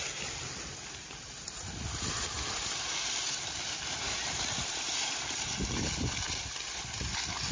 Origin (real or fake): real